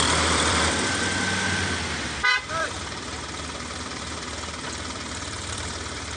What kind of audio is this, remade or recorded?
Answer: remade